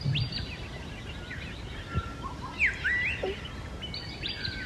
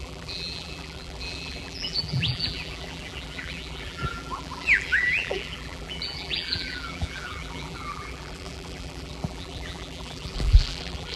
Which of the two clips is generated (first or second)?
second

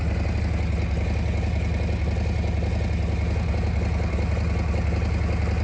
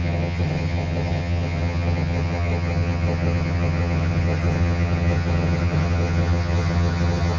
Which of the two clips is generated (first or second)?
second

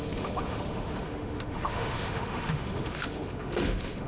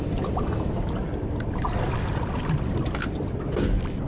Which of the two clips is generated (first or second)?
first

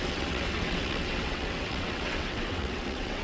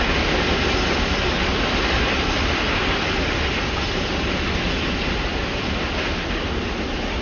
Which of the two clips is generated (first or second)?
first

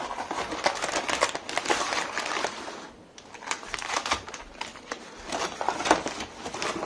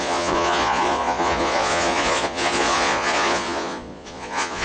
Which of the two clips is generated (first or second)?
second